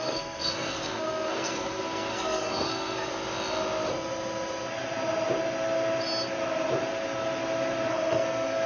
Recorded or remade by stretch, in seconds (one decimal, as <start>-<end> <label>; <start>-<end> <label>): 0.0-3.1 remade; 3.1-7.9 recorded; 7.9-8.7 remade